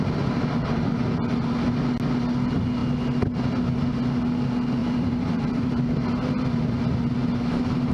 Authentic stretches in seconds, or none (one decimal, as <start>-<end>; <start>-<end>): 0.0-4.8; 5.7-7.9

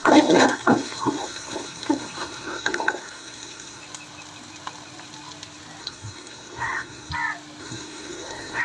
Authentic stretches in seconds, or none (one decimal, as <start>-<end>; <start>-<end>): 3.8-5.8; 7.1-7.6

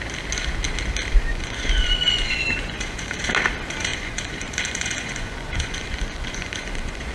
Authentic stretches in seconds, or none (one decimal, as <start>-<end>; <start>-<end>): 0.0-1.3; 3.2-3.9